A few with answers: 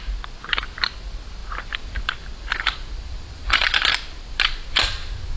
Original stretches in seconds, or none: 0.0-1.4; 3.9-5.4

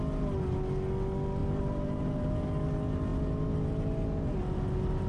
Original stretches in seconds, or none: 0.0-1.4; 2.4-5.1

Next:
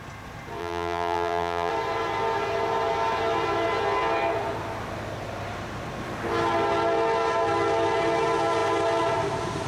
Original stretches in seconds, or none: 0.0-0.6; 1.7-9.7

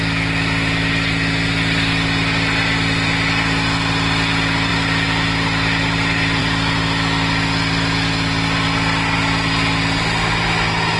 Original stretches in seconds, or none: 0.0-4.7; 6.4-11.0